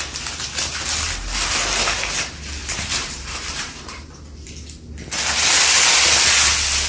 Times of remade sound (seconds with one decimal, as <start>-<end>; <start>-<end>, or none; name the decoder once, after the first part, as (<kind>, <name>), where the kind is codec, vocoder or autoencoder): 2.6-3.8 (vocoder, BigVGAN v2)